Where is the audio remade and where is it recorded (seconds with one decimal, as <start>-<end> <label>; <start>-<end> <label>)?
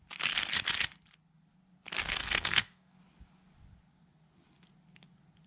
0.0-2.2 recorded; 2.2-3.0 remade; 3.0-5.5 recorded